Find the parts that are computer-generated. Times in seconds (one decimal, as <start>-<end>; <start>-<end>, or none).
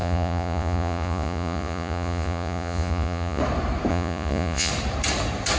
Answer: 0.0-3.4; 3.9-4.7